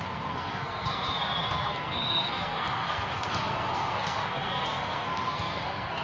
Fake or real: fake